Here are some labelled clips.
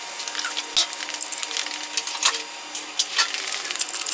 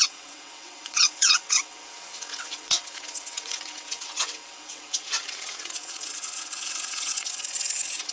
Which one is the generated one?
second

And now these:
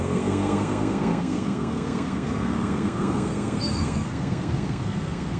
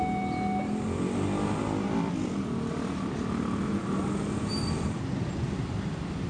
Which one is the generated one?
first